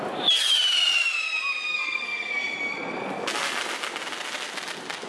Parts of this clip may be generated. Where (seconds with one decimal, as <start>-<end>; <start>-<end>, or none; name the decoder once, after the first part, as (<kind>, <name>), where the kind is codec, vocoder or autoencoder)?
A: 1.7-2.4 (codec, SNAC)